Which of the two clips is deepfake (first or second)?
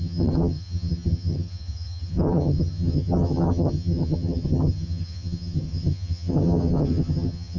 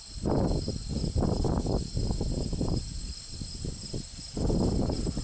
first